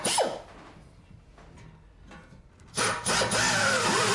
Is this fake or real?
real